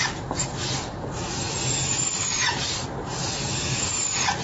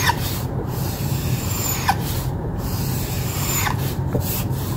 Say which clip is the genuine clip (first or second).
first